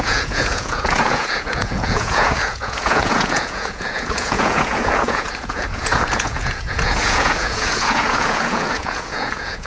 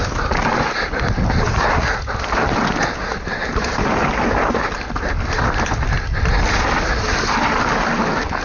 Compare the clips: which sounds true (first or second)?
second